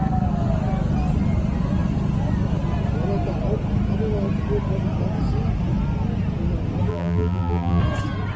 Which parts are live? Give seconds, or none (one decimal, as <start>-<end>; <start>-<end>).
0.0-6.9; 7.8-8.4